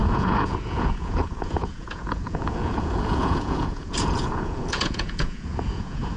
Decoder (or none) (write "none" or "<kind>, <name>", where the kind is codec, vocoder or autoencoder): vocoder, Vocos